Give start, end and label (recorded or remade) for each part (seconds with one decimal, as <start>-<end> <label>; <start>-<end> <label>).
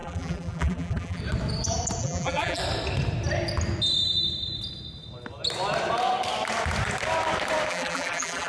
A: 0.0-1.2 remade; 1.2-2.0 recorded; 2.0-2.6 remade; 2.6-7.7 recorded; 7.7-8.5 remade